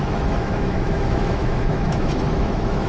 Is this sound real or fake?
fake